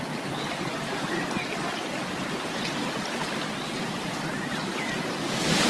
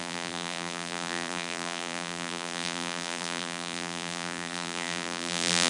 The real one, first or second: first